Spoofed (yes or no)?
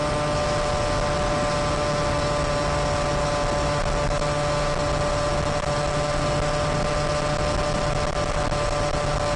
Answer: no